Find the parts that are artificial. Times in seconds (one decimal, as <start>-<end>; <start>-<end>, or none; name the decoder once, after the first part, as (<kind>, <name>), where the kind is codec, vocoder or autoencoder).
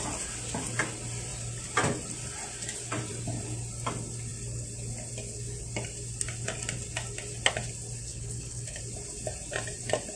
8.1-8.8 (codec, HILCodec)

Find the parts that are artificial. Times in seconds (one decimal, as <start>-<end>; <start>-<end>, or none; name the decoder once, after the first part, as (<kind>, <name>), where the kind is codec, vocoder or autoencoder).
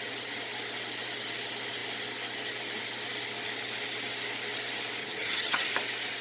5.0-5.7 (vocoder, HiFi-GAN)